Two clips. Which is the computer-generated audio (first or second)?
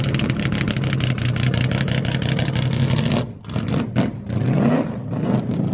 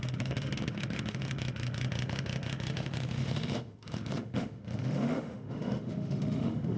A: second